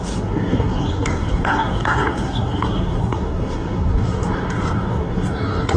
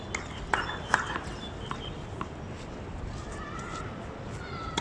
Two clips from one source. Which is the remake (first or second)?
first